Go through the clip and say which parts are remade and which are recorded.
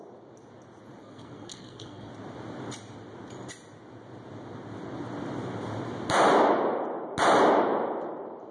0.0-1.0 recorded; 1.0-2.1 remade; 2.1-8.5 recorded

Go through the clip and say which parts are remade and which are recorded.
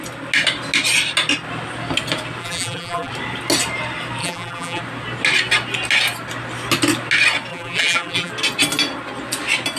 0.0-2.4 recorded; 2.4-3.1 remade; 3.1-4.2 recorded; 4.2-4.8 remade; 4.8-7.5 recorded; 7.5-8.3 remade; 8.3-9.8 recorded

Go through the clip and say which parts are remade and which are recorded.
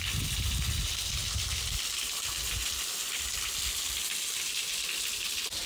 0.0-5.7 recorded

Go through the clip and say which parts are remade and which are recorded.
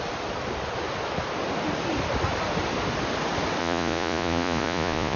0.0-3.6 recorded; 3.6-5.2 remade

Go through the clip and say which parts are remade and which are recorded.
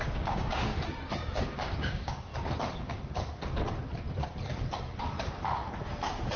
0.0-0.7 remade; 0.7-1.3 recorded; 1.3-2.3 remade; 2.3-6.4 recorded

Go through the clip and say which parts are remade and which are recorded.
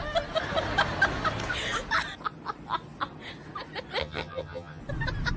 0.0-4.0 recorded; 4.0-4.8 remade; 4.8-5.4 recorded